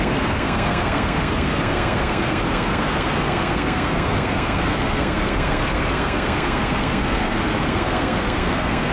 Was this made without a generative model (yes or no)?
no